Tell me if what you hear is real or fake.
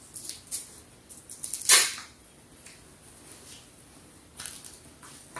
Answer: real